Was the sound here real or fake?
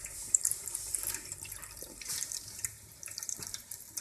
fake